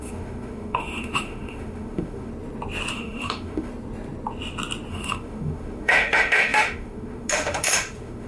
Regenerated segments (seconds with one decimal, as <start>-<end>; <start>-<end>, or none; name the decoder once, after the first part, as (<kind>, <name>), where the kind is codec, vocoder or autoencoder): 0.0-2.3 (autoencoder, DAC-VAE); 2.9-3.7; 4.9-8.3